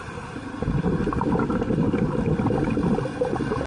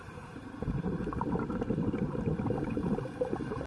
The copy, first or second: second